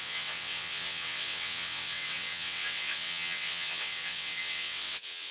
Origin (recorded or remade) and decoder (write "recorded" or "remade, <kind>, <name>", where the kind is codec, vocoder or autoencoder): remade, vocoder, WaveNeXt